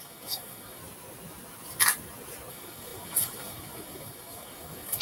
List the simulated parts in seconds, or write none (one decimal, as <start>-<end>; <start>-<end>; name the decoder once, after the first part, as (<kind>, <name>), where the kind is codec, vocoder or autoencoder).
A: 0.0-0.8 (codec, DAC); 2.5-5.0